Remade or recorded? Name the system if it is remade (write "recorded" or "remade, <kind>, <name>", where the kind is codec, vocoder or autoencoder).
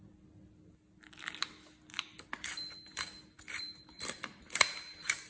recorded